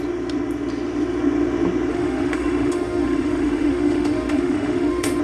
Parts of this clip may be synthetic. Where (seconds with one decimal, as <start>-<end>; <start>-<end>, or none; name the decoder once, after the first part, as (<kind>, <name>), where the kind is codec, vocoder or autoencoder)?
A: 1.9-5.2 (autoencoder, DAC-VAE)